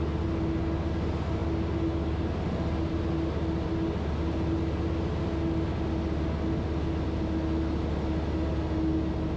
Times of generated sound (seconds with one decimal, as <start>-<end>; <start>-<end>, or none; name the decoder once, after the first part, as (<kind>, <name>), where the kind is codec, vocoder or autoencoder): none